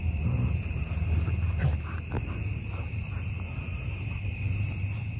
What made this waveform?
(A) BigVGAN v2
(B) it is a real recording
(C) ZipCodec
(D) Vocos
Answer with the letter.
A